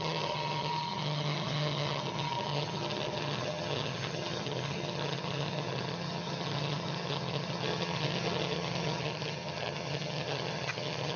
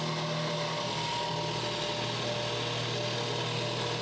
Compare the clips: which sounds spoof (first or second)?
first